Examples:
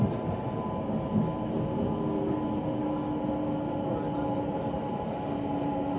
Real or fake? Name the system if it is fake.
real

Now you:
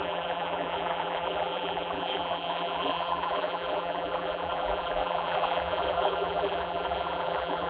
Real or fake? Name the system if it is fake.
fake, vocoder, BigVGAN v2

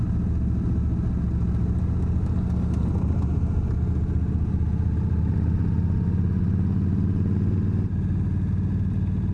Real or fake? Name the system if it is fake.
real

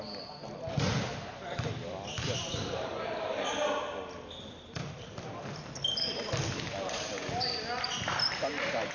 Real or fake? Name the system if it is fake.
real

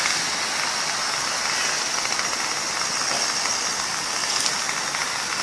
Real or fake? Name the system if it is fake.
real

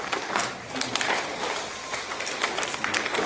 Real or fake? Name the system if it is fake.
fake, vocoder, BigVGAN v2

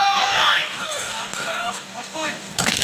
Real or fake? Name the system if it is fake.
fake, codec, DAC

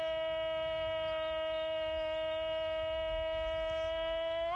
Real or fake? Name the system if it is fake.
real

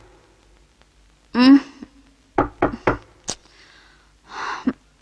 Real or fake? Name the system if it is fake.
real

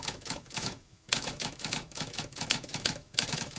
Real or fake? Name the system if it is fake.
fake, autoencoder, DAC-VAE